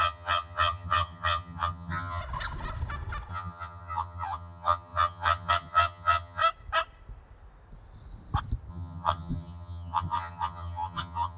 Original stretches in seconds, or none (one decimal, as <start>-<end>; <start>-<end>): 2.2-3.3; 6.4-8.7